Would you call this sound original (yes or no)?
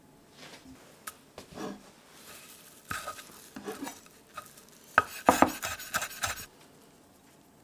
yes